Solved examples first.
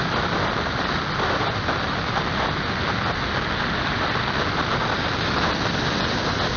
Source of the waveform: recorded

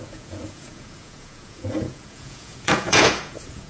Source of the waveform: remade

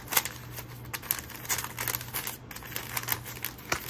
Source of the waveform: recorded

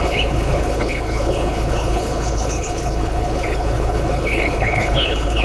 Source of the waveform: remade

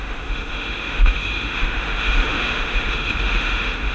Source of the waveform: remade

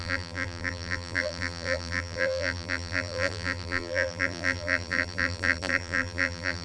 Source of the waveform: remade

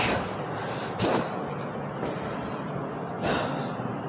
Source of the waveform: recorded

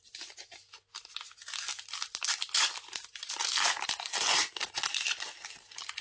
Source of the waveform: recorded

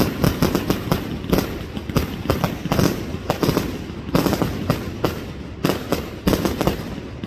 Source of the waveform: recorded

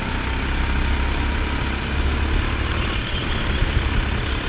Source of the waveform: recorded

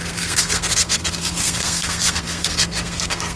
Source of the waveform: remade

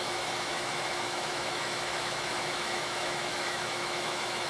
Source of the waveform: remade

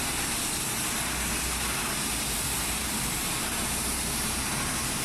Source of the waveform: remade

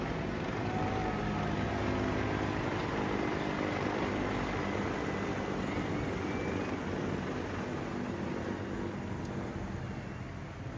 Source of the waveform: recorded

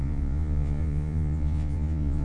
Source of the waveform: remade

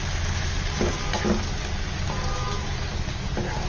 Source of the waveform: recorded